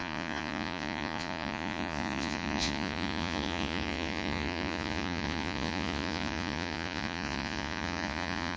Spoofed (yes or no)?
yes